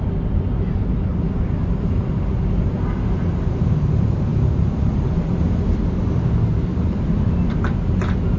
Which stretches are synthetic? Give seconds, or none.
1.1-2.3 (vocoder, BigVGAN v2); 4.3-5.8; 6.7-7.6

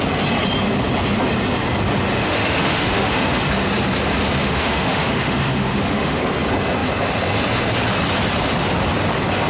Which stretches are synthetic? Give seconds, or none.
2.2-3.4 (autoencoder, DAC-VAE); 4.4-6.2

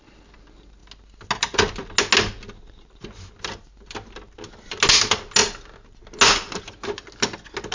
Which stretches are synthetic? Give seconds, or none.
none

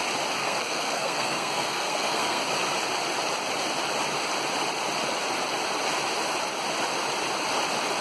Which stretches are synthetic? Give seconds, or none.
0.4-2.4 (codec, SNAC)

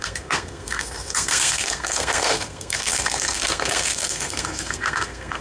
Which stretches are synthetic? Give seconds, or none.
0.0-5.4 (codec, SNAC)

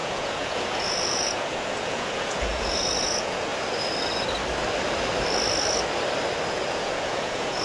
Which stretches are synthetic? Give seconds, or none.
0.0-3.5 (vocoder, Vocos); 6.5-7.6

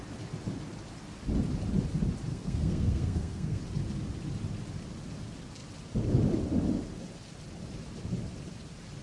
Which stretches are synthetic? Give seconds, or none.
2.3-3.6 (codec, SNAC)

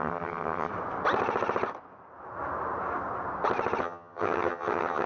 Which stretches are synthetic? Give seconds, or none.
0.0-0.7 (vocoder, HiFi-GAN); 3.8-5.1